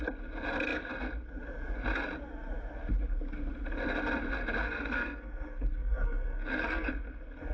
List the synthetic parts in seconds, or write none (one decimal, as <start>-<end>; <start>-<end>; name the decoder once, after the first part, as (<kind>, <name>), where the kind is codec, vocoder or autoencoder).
4.6-6.9 (codec, SNAC)

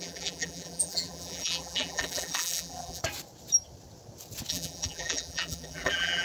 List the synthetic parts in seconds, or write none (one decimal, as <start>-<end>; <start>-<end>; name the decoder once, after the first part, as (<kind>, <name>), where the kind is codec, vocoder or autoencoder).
0.0-3.0 (vocoder, BigVGAN v2); 4.5-6.2